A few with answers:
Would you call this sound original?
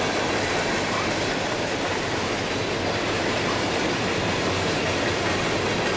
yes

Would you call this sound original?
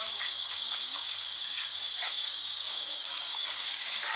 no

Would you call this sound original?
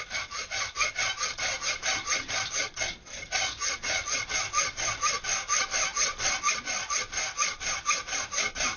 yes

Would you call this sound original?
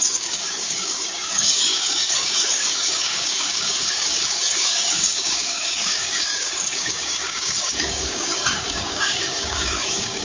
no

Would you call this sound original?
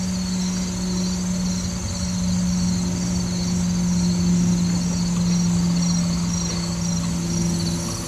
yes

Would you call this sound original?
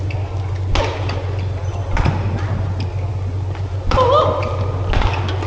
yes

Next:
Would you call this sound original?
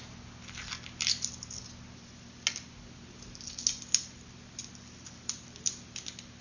yes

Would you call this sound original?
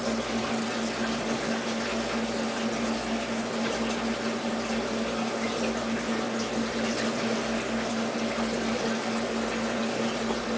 yes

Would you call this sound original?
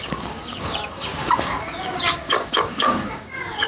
no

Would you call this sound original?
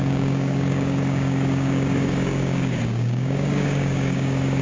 no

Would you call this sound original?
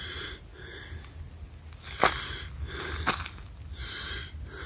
yes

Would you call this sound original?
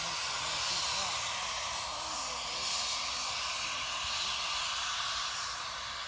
yes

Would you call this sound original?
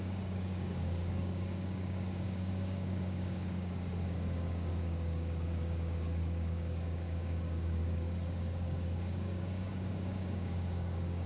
no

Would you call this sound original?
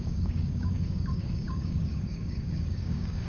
no